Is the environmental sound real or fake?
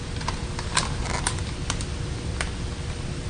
real